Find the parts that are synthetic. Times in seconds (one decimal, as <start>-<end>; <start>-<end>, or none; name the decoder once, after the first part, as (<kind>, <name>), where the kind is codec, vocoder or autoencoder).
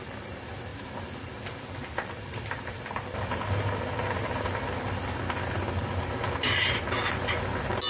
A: none